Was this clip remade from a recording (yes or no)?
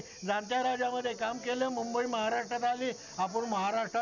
no